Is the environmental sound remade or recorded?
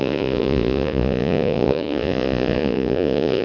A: remade